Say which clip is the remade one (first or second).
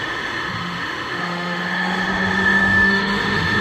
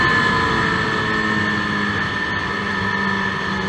first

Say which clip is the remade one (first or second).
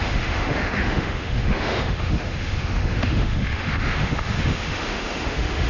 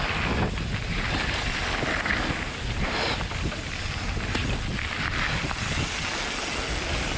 first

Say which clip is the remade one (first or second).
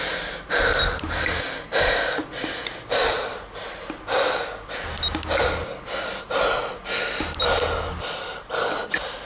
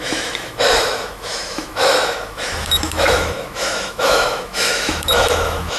second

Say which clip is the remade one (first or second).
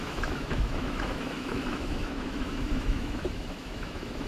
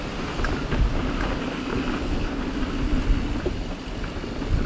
first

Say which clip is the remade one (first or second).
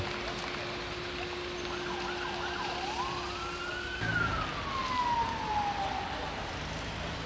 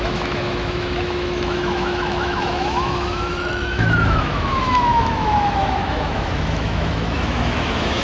second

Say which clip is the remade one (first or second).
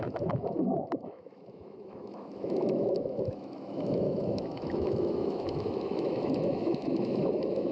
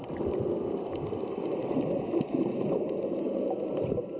first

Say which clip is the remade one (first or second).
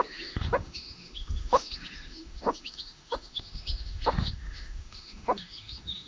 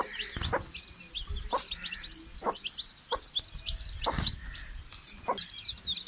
first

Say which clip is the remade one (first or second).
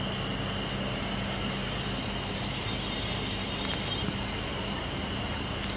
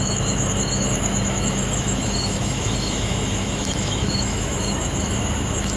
second